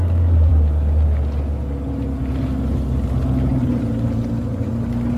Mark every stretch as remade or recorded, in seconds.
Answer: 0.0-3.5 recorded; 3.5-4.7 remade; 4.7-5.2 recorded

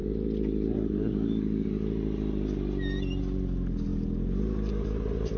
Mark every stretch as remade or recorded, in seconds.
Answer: 0.0-5.4 recorded

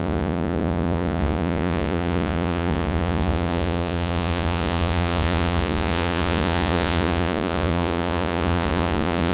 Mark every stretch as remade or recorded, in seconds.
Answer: 0.0-9.3 remade

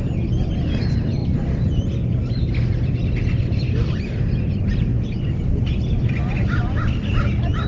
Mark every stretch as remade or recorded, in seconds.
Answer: 0.0-4.9 recorded; 4.9-6.1 remade; 6.1-7.7 recorded

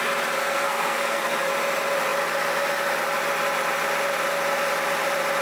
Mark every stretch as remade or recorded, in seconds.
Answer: 0.0-0.4 recorded; 0.4-1.5 remade; 1.5-5.4 recorded

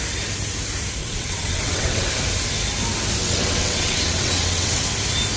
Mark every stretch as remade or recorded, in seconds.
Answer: 0.0-1.0 recorded; 1.0-2.1 remade; 2.1-3.2 recorded; 3.2-4.8 remade; 4.8-5.4 recorded

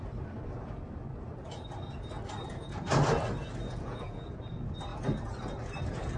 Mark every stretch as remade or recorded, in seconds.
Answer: 0.0-3.7 recorded; 3.7-4.3 remade; 4.3-6.2 recorded

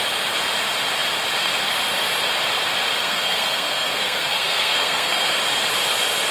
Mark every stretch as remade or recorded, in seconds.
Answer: 0.0-3.0 recorded; 3.0-5.4 remade; 5.4-6.3 recorded